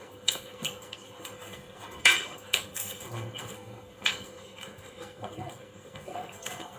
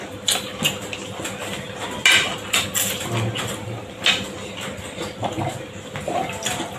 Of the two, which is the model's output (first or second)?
first